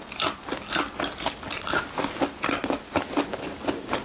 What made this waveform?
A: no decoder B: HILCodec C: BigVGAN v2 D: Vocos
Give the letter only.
A